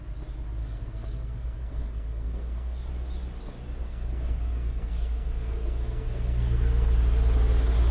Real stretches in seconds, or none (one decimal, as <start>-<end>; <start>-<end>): 0.0-0.6; 2.9-3.8; 6.9-7.9